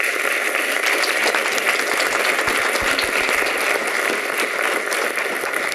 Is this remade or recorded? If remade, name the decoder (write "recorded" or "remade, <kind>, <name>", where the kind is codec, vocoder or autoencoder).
recorded